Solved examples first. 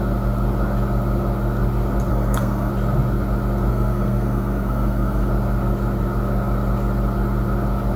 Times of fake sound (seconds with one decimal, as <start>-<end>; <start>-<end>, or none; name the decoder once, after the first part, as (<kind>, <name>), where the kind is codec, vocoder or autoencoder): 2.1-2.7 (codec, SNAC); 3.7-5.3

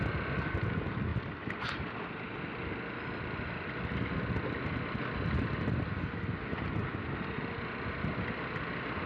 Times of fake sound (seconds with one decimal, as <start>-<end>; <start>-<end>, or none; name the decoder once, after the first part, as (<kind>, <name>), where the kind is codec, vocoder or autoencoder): none

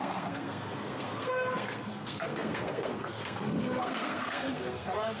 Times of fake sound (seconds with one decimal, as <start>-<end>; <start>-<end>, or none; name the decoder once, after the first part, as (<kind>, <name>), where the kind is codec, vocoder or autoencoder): 0.0-5.2 (codec, SNAC)

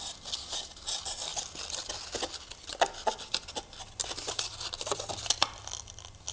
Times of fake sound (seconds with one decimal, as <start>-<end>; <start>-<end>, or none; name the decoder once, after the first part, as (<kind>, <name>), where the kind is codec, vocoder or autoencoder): none

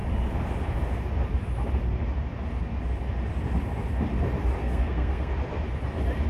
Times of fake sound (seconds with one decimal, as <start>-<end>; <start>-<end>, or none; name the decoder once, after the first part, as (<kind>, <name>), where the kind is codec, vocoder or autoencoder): 4.6-5.3 (codec, SNAC)